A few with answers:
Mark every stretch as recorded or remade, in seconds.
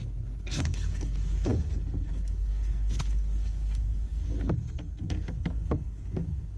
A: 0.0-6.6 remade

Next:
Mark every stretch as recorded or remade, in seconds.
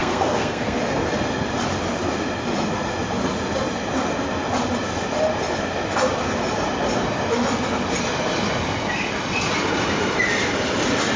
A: 0.0-0.8 remade; 0.8-11.2 recorded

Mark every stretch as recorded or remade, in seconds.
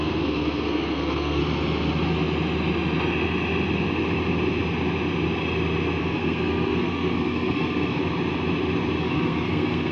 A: 0.0-1.4 remade; 1.4-6.0 recorded; 6.0-8.0 remade; 8.0-9.0 recorded; 9.0-9.9 remade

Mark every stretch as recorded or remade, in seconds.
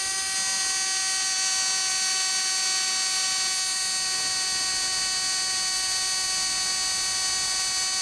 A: 0.0-8.0 recorded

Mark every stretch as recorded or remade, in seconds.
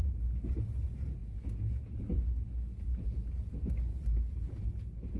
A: 0.0-1.2 recorded; 1.2-2.0 remade; 2.0-5.2 recorded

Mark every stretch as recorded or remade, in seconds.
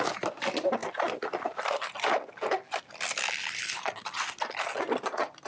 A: 0.0-5.5 recorded